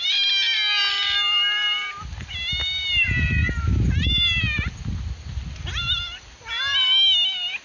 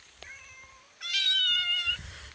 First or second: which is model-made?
second